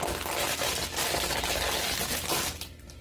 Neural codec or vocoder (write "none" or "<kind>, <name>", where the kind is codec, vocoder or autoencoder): none